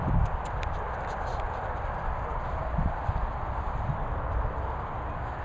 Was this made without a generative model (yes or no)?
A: yes